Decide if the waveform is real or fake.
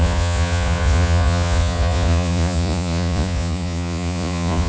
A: fake